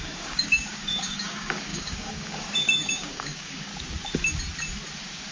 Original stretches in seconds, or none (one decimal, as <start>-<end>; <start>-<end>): 3.7-5.3